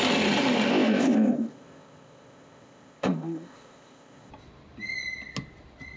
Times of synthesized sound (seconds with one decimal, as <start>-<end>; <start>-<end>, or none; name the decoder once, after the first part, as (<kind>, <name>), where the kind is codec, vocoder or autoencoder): 0.7-4.3 (codec, ZipCodec)